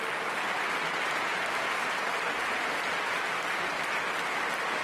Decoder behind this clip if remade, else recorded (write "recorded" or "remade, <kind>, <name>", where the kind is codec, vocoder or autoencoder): recorded